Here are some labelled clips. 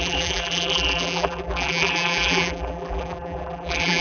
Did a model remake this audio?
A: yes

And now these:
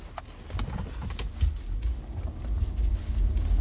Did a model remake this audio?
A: no